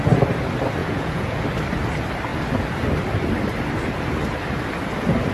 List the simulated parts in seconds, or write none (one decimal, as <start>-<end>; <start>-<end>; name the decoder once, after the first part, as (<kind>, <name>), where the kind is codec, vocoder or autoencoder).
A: 0.8-1.4 (vocoder, Vocos)